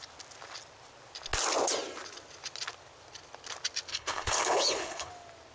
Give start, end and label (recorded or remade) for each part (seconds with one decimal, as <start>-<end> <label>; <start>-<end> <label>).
0.0-3.9 recorded; 3.9-5.1 remade; 5.1-5.5 recorded